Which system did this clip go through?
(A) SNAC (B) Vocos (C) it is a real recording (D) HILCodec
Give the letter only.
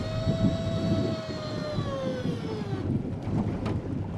C